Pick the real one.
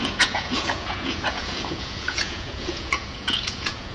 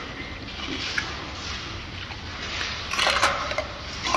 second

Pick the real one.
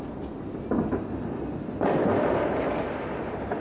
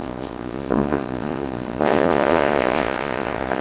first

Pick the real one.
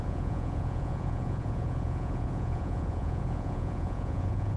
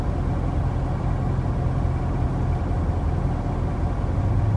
second